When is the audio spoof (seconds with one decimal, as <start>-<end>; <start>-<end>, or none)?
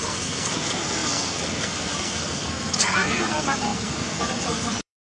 0.0-5.0